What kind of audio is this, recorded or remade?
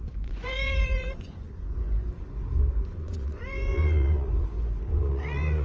remade